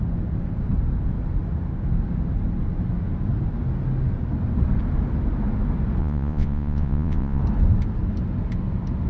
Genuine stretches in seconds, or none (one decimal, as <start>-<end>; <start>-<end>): 0.0-6.0; 7.4-9.1